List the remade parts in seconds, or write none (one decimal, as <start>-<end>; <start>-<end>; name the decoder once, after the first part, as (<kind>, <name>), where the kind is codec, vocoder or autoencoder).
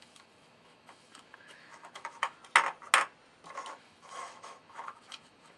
0.0-2.4 (autoencoder, DAC-VAE); 3.7-5.6